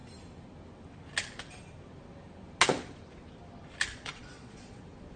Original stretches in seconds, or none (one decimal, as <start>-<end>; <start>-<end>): 0.0-3.9; 4.8-5.2